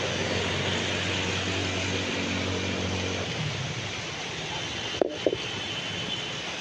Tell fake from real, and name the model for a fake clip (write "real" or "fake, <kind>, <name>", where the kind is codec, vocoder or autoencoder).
real